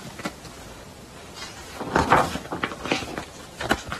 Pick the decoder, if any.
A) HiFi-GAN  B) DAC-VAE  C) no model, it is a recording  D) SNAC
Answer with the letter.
C